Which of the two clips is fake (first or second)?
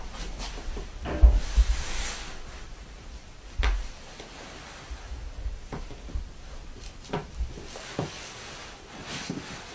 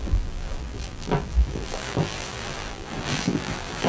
second